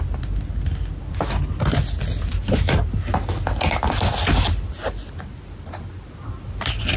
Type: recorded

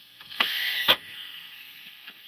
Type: remade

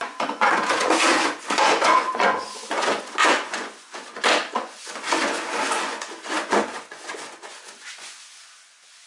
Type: remade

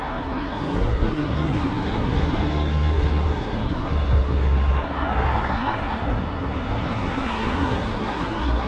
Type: remade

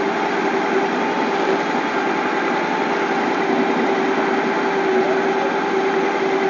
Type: recorded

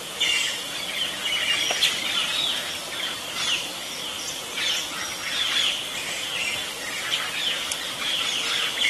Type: recorded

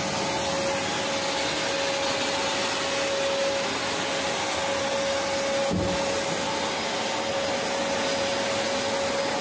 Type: recorded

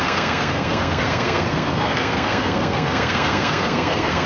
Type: remade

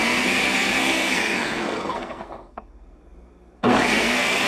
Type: remade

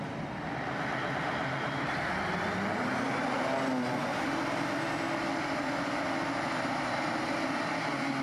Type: recorded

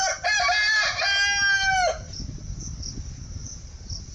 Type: recorded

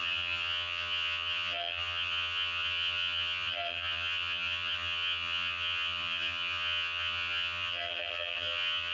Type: remade